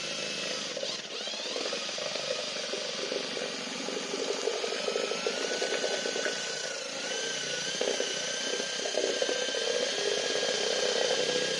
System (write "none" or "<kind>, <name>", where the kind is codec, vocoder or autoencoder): none